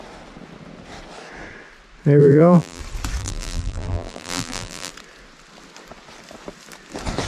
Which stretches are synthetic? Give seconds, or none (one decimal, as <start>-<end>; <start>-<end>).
2.2-2.8; 3.2-4.9